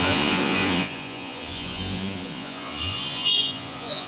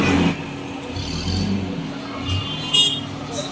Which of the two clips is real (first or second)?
second